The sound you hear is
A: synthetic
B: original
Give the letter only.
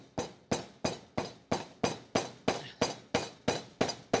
B